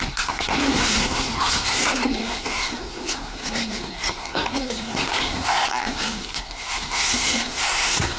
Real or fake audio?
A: fake